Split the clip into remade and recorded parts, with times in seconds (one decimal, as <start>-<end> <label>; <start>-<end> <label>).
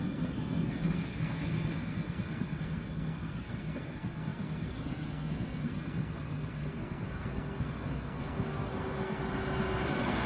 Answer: 0.0-9.2 remade; 9.2-9.9 recorded; 9.9-10.3 remade